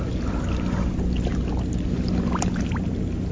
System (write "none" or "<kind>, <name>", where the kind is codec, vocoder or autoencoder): none